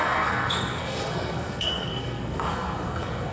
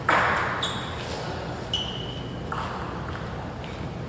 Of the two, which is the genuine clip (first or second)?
second